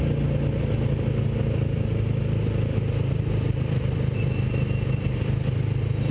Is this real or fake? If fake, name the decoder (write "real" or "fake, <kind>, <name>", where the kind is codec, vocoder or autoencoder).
real